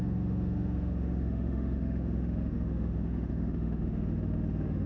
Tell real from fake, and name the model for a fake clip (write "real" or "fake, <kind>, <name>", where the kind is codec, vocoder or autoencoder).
fake, autoencoder, DAC-VAE